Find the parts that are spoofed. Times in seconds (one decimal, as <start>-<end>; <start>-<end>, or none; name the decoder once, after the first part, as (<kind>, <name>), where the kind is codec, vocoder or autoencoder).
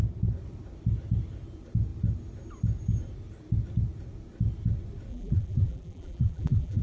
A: 5.1-6.8 (vocoder, BigVGAN v2)